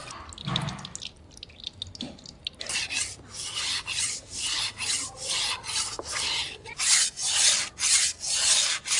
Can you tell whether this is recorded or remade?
recorded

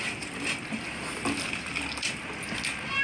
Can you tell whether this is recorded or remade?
recorded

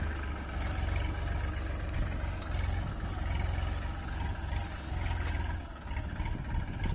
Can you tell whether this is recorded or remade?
recorded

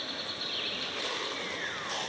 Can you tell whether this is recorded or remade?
recorded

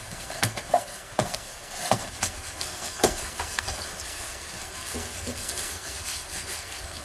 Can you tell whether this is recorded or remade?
remade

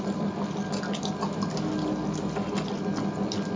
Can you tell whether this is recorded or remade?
recorded